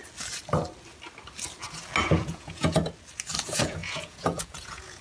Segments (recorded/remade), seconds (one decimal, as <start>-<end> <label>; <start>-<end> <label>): 0.0-2.0 recorded; 2.0-2.8 remade; 2.8-3.4 recorded; 3.4-5.0 remade